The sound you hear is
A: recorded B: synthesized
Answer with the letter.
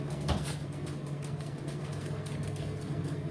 B